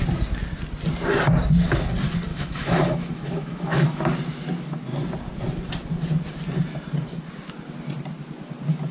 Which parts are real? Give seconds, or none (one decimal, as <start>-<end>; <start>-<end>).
0.0-2.3; 4.0-8.9

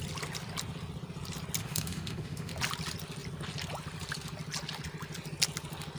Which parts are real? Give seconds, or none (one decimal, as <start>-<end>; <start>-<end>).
0.0-1.6; 2.5-6.0

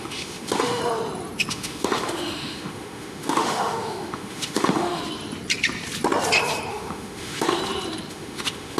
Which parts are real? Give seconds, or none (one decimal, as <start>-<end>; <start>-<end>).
0.8-1.5; 5.0-6.7; 7.6-8.1

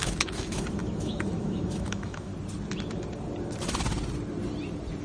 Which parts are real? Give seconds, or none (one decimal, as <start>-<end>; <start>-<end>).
2.3-5.0

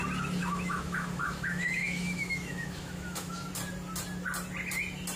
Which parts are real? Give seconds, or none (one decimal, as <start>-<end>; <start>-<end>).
0.0-0.4; 3.5-5.2

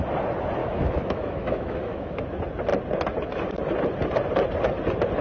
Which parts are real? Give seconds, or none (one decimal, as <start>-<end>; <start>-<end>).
0.0-0.6; 2.2-5.2